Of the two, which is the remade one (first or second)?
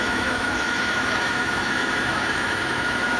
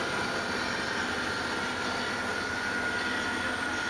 first